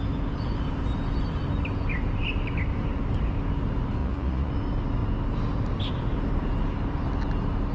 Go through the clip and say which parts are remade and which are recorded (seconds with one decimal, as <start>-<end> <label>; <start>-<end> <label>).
0.0-4.0 recorded; 4.0-4.5 remade; 4.5-7.7 recorded